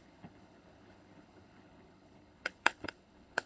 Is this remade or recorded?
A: remade